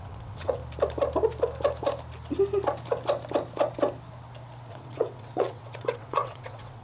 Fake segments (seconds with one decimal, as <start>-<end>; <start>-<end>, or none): 0.0-0.6; 4.7-6.8